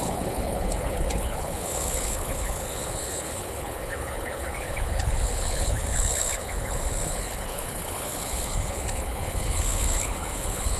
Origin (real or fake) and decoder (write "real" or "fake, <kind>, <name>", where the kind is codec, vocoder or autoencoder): fake, codec, HILCodec